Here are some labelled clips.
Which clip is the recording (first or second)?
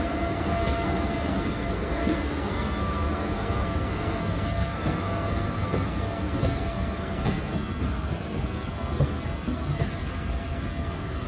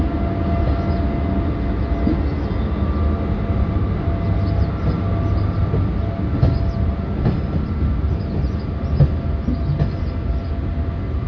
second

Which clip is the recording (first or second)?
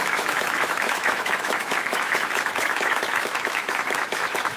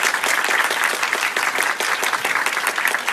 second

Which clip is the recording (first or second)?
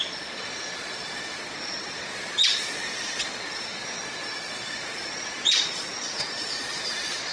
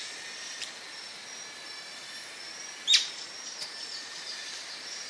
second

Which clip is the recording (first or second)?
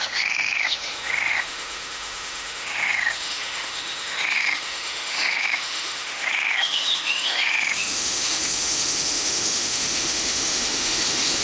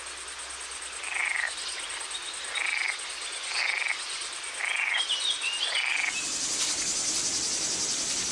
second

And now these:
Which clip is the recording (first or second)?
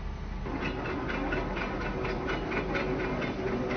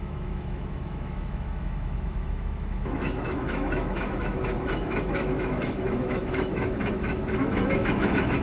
first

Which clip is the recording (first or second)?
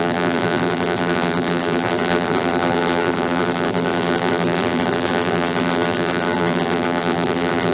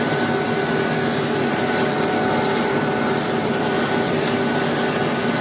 second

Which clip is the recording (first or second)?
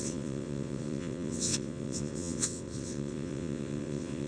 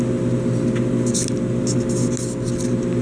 second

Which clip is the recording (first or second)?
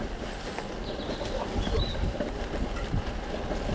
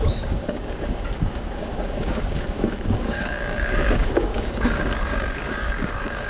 first